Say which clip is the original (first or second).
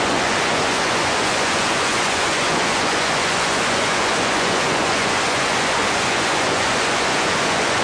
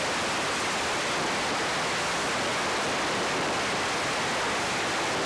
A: second